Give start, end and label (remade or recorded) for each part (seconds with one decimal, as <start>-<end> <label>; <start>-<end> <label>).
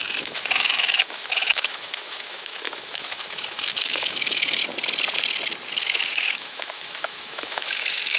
0.0-4.6 remade; 4.6-5.9 recorded; 5.9-8.2 remade